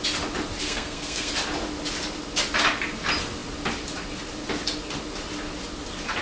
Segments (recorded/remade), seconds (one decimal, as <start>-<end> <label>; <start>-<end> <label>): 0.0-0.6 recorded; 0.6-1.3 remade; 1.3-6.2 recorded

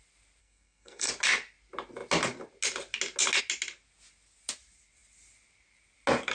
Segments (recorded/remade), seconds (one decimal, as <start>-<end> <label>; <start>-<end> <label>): 0.0-0.4 recorded; 0.4-1.1 remade; 1.1-6.3 recorded

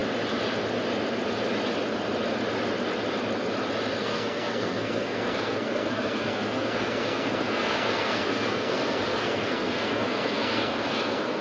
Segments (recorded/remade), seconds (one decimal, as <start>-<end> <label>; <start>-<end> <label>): 0.0-4.0 recorded; 4.0-11.4 remade

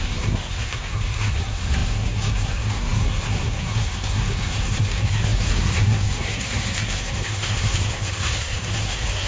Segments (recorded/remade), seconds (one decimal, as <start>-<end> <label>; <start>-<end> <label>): 0.0-9.3 remade